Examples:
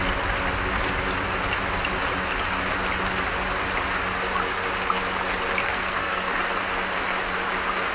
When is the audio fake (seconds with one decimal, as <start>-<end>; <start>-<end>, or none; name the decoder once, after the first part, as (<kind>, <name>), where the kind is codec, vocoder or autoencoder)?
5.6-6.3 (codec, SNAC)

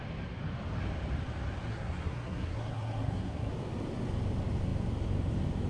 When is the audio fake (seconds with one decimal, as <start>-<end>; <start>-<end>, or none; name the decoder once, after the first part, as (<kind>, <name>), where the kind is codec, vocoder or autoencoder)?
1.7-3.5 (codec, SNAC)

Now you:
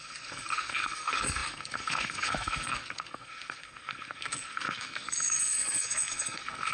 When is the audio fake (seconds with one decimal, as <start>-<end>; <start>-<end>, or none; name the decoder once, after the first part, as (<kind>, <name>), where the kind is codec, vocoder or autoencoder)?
0.0-6.7 (codec, SNAC)

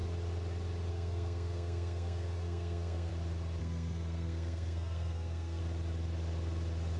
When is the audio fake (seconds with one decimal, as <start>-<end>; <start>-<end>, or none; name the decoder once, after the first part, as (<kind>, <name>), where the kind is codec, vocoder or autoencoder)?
0.9-3.1 (codec, SNAC); 3.6-5.6

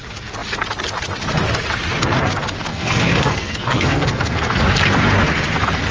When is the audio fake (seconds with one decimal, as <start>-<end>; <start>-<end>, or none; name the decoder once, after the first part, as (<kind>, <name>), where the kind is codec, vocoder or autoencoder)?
2.7-4.6 (codec, SNAC)

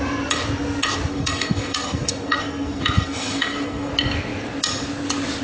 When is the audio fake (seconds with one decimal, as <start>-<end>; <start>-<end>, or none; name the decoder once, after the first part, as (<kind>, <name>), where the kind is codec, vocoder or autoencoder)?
1.1-3.9 (codec, SNAC)

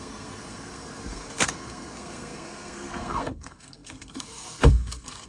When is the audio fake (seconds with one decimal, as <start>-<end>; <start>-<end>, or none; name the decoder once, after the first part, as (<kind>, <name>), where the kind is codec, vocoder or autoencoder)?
0.0-5.3 (codec, SNAC)

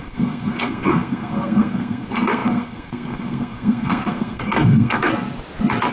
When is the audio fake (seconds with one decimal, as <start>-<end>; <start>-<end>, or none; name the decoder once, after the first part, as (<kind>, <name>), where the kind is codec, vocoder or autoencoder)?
0.0-5.1 (codec, SNAC)